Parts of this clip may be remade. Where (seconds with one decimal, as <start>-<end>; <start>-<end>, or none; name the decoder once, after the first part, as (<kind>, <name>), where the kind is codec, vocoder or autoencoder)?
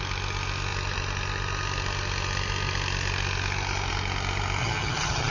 4.6-5.3 (vocoder, HiFi-GAN)